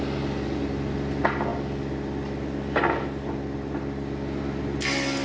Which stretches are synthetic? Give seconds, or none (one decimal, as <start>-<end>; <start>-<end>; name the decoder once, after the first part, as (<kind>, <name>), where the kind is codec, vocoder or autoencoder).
none